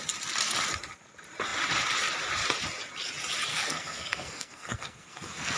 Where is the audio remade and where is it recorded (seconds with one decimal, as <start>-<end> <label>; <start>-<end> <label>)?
0.0-3.5 recorded; 3.5-5.6 remade